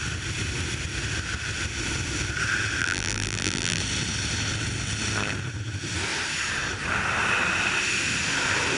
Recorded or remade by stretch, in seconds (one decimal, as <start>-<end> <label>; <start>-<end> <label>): 0.0-2.8 recorded; 2.8-3.8 remade; 3.8-8.8 recorded